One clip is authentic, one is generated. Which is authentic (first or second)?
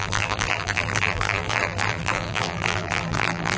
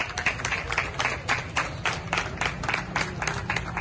second